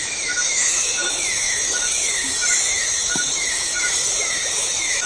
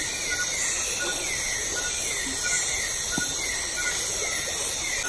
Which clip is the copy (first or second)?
first